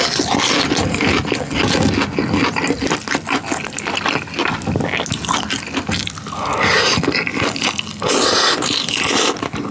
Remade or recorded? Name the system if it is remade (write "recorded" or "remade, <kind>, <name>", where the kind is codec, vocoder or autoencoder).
recorded